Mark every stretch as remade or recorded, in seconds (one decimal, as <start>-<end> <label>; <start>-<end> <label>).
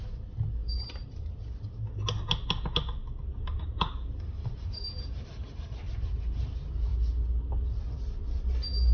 0.0-0.6 recorded; 0.6-1.3 remade; 1.3-3.0 recorded; 3.0-5.9 remade; 5.9-8.9 recorded